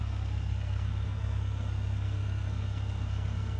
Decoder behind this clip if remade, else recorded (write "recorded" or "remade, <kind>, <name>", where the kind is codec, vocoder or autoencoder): remade, codec, SNAC